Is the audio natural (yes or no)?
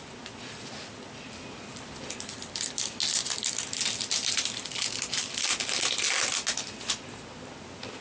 yes